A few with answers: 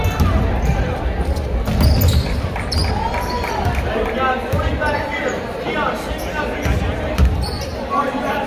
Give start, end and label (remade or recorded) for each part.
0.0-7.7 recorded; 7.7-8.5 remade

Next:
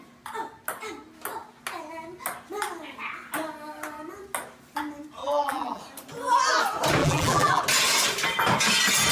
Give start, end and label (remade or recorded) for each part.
0.0-5.2 recorded; 5.2-5.8 remade; 5.8-7.0 recorded; 7.0-7.6 remade; 7.6-9.1 recorded

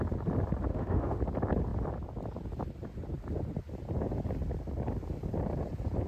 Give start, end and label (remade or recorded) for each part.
0.0-0.7 recorded; 0.7-1.2 remade; 1.2-6.1 recorded